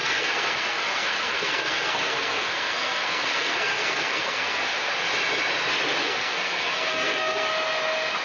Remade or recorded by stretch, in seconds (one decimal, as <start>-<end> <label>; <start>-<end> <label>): 0.0-4.9 remade; 4.9-6.0 recorded; 6.0-7.5 remade; 7.5-8.2 recorded